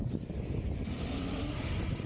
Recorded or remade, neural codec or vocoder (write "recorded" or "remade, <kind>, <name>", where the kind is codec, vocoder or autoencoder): recorded